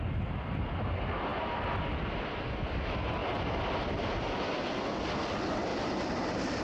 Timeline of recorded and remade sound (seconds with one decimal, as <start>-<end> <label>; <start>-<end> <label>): 0.0-5.7 recorded; 5.7-6.6 remade